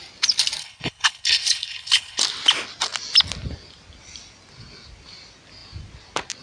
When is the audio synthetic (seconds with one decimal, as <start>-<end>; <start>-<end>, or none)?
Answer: 0.6-2.2